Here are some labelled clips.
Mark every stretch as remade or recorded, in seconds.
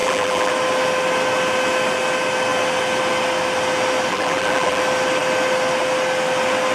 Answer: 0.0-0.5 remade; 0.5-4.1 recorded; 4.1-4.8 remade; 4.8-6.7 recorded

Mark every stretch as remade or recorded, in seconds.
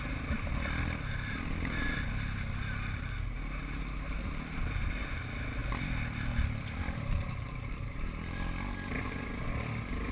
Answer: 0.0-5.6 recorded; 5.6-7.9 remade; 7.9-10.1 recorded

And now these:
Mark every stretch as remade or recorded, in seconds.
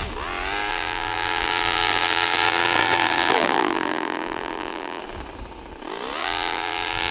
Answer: 0.0-0.7 recorded; 0.7-5.0 remade; 5.0-6.2 recorded; 6.2-7.1 remade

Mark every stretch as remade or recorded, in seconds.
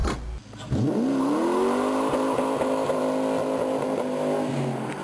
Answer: 0.0-3.0 remade; 3.0-5.0 recorded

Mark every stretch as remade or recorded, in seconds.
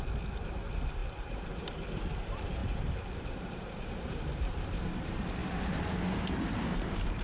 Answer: 0.0-7.2 remade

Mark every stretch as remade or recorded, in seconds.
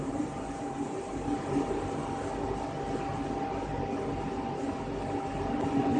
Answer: 0.0-2.0 remade; 2.0-5.6 recorded; 5.6-6.0 remade